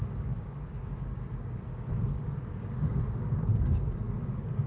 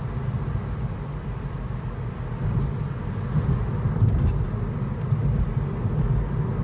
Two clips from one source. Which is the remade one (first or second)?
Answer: first